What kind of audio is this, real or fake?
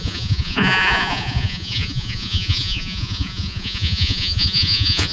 fake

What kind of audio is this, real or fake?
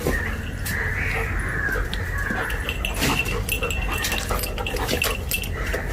real